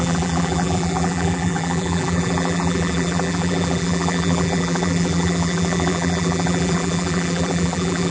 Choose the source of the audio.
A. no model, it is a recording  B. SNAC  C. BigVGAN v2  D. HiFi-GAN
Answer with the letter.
C